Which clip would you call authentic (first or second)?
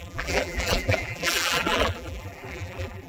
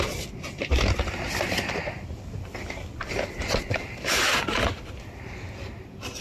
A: second